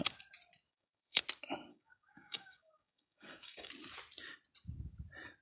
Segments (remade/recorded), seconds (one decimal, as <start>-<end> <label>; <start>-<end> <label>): 0.0-0.7 recorded; 0.7-1.2 remade; 1.2-1.7 recorded; 1.7-3.7 remade; 3.7-5.4 recorded